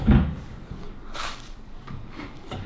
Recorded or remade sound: remade